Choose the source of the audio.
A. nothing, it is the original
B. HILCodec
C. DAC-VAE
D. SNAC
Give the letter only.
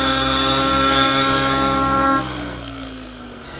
D